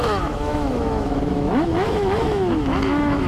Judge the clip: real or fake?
fake